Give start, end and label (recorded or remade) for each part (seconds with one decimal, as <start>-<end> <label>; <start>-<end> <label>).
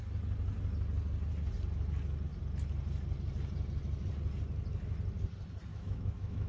0.0-5.7 recorded; 5.7-6.5 remade